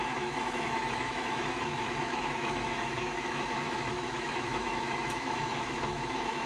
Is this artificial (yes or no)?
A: yes